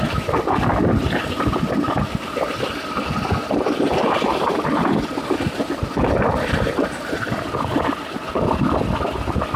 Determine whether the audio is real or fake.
real